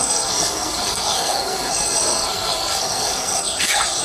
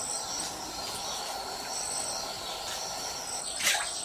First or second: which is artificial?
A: first